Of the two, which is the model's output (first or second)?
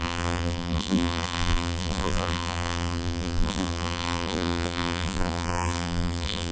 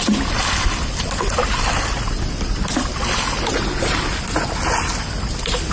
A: first